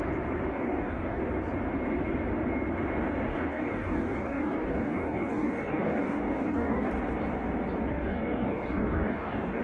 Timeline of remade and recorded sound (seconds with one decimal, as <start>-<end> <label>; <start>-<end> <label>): 0.0-0.5 recorded; 0.5-1.2 remade; 1.2-3.3 recorded; 3.3-6.9 remade; 6.9-7.9 recorded; 7.9-9.6 remade